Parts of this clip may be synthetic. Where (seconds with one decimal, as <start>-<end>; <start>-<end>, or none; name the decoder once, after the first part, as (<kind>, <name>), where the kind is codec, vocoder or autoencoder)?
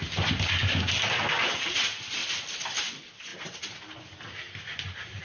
none